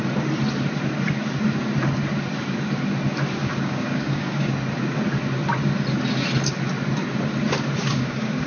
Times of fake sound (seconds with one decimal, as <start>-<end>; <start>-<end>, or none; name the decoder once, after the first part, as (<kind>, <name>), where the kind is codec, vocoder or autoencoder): 3.4-4.5 (codec, DAC); 7.8-8.5